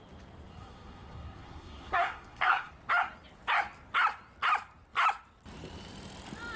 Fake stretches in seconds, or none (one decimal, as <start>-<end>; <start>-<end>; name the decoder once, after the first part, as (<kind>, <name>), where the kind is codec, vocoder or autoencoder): 0.5-2.7 (codec, SNAC)